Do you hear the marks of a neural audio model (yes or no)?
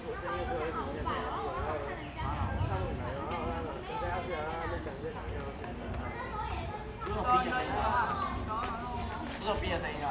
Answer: no